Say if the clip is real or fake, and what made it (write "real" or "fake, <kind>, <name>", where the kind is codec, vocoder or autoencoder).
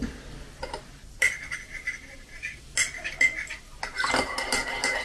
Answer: real